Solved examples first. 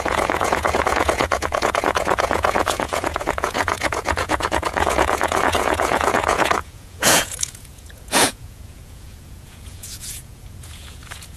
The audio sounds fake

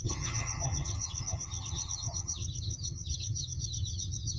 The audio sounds fake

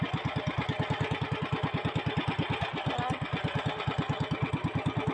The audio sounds real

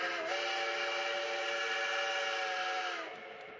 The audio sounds real